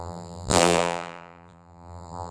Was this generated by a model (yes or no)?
yes